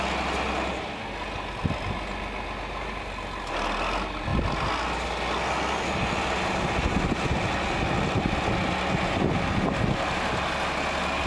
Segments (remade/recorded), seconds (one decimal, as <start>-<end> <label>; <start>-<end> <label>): 0.0-11.3 recorded